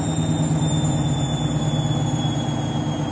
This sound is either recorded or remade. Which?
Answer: recorded